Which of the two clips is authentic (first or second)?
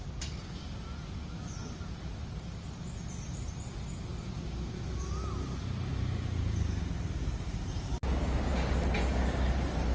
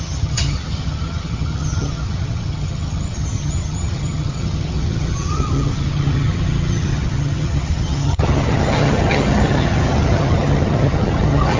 first